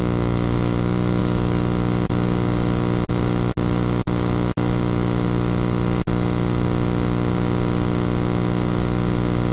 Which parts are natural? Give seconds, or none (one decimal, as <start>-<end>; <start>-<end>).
0.0-9.5